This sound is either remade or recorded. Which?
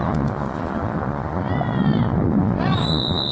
remade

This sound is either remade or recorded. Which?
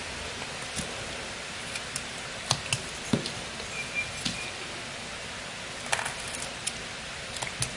recorded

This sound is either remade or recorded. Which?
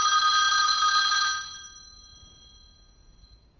remade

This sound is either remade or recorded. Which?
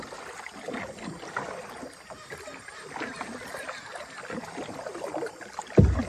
recorded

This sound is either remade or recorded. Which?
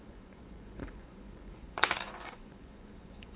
remade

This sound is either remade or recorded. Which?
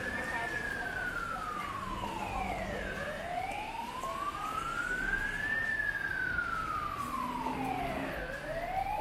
recorded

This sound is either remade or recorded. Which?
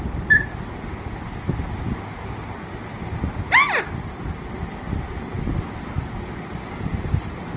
recorded